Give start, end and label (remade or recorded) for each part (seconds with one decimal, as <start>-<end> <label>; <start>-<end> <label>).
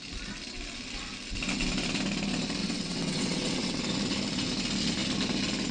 0.0-2.6 recorded; 2.6-3.8 remade; 3.8-5.7 recorded